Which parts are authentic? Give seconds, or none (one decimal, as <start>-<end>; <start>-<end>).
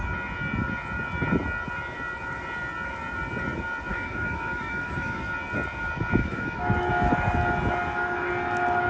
0.0-3.9; 5.2-6.2; 6.9-8.9